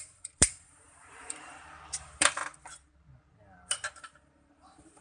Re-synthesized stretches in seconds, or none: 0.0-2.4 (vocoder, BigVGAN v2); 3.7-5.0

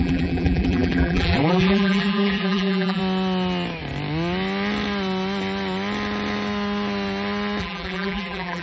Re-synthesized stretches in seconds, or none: 0.0-3.0 (vocoder, BigVGAN v2); 7.6-8.6

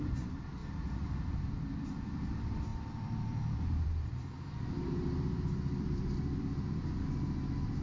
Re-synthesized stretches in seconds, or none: 0.0-7.8 (vocoder, BigVGAN v2)

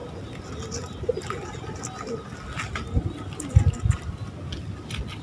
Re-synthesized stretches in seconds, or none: none

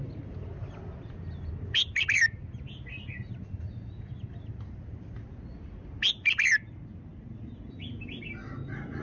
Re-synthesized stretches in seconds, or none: 7.1-8.2 (vocoder, BigVGAN v2)

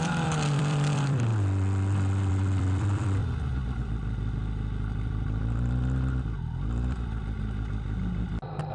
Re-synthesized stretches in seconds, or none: 0.0-1.3 (vocoder, BigVGAN v2); 2.3-3.2